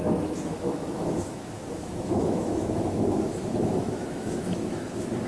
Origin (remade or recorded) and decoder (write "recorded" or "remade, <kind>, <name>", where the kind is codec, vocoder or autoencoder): remade, autoencoder, DAC-VAE